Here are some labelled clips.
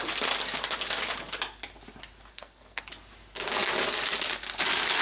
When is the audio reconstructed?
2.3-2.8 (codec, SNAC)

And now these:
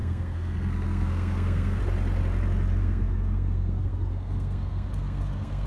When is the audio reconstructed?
0.0-1.8 (codec, SNAC); 2.8-5.7

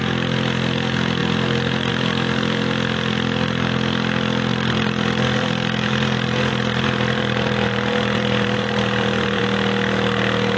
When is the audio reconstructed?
4.5-9.4 (vocoder, BigVGAN v2)